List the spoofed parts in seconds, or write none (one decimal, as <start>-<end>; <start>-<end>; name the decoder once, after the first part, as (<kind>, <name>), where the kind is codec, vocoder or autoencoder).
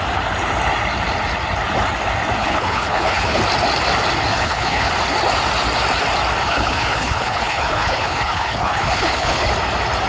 2.4-3.4 (codec, HILCodec); 4.3-4.9; 6.4-9.5